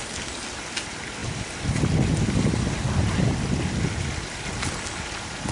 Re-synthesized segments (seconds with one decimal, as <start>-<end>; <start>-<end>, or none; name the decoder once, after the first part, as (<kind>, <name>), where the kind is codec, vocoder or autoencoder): none